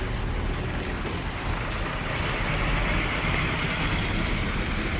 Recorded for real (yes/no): yes